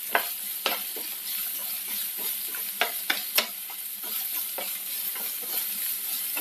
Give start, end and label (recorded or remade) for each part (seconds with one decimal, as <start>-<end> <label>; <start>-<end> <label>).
0.0-6.4 recorded